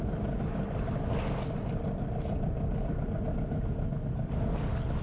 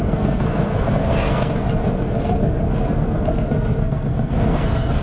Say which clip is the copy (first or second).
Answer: second